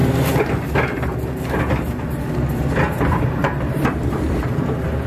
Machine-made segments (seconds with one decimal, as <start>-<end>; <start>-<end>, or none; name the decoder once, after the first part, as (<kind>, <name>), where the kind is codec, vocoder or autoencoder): 3.1-5.1 (vocoder, BigVGAN v2)